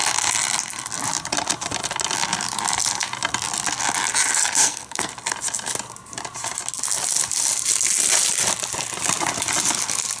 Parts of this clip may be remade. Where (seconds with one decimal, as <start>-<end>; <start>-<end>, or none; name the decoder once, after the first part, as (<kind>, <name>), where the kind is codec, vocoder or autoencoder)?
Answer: 4.3-5.1 (codec, SNAC)